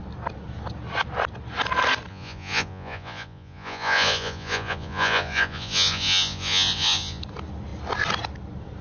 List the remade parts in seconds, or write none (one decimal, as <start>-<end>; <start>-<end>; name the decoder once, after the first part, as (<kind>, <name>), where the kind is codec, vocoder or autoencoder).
2.1-7.2 (vocoder, Vocos)